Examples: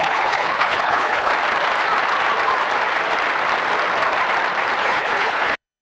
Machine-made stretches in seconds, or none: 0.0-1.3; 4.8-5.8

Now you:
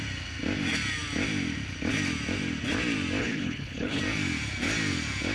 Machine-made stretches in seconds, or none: 3.2-4.0

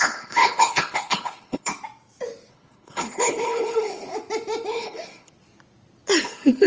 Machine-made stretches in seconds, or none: 0.0-1.7; 2.5-4.1; 4.7-5.3; 6.2-6.7

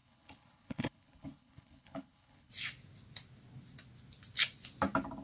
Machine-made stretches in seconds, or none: 0.0-2.5

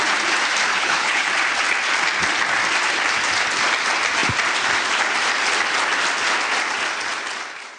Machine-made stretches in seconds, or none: 0.7-1.3